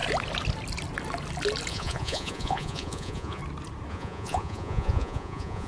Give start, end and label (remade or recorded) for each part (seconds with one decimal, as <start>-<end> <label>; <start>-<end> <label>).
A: 0.0-1.7 recorded; 1.7-3.4 remade; 3.4-3.9 recorded; 3.9-5.7 remade